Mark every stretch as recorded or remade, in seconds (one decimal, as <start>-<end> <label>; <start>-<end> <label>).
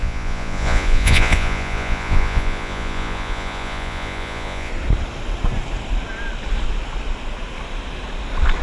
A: 0.0-4.7 remade; 4.7-8.6 recorded